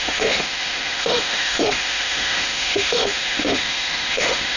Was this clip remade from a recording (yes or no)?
yes